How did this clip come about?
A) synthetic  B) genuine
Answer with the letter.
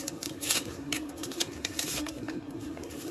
A